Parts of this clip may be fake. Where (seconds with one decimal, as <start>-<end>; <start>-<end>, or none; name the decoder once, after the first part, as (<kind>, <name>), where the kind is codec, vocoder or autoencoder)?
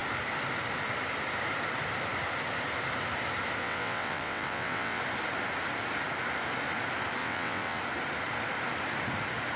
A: 3.6-5.0 (vocoder, WaveNeXt); 7.2-7.8